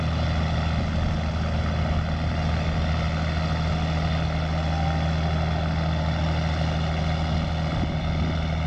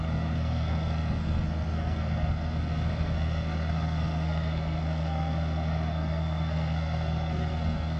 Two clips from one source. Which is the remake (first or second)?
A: second